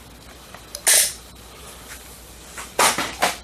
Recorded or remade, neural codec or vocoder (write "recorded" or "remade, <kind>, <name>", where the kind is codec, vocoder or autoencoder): recorded